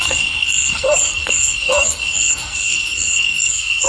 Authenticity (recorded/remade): remade